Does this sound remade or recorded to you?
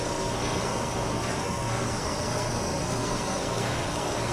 remade